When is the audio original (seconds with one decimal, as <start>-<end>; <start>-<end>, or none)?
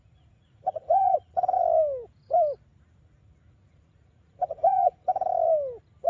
1.6-3.0; 5.1-6.1